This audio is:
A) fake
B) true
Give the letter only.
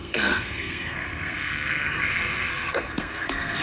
A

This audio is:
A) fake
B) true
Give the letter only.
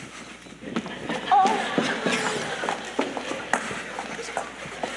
B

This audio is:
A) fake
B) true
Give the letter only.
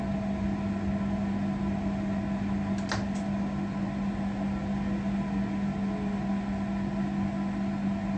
B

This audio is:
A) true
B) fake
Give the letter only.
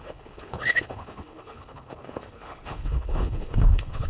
B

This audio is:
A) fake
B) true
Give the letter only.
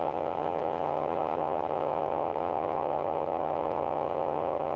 A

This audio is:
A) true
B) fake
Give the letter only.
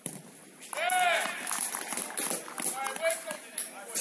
A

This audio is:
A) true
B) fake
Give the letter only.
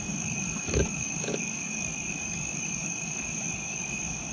B